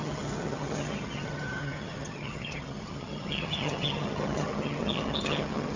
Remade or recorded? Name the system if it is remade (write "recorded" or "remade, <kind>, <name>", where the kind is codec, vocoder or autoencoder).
remade, vocoder, HiFi-GAN